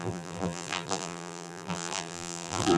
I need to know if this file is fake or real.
fake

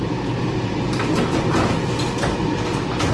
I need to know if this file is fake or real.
real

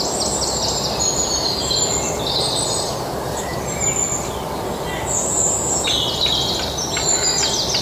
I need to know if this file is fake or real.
real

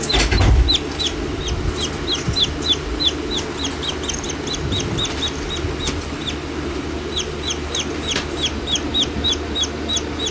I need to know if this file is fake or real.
real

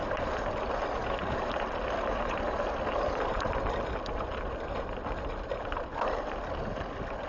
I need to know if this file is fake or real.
fake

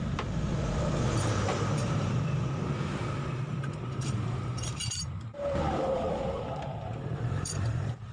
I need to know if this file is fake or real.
fake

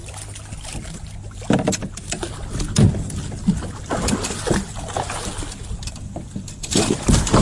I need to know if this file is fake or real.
real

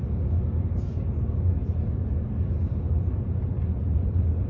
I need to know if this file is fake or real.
real